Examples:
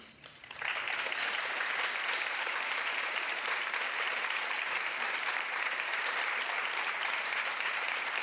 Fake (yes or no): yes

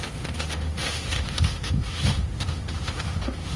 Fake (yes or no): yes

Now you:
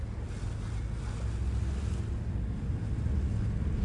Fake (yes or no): no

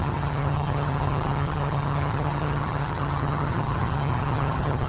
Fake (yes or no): yes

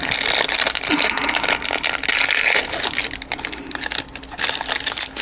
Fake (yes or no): no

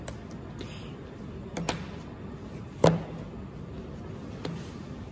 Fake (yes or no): no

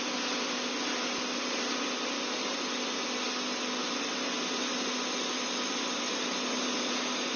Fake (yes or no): no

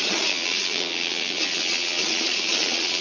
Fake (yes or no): yes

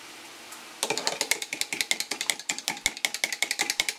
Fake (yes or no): no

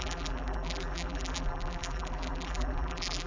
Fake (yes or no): yes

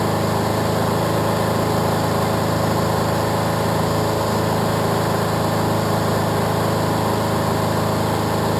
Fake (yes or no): no